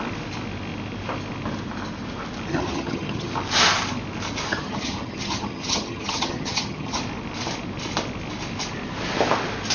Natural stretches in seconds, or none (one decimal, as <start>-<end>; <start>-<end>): 0.0-2.5; 3.3-4.5; 7.0-9.7